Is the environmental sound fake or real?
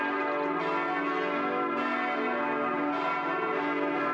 real